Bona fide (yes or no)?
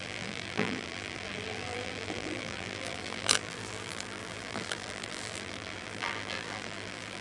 no